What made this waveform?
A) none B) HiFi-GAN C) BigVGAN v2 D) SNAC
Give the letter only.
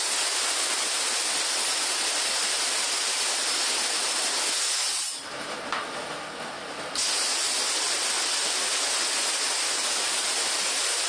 A